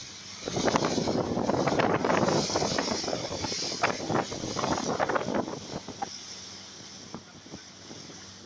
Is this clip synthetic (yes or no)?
no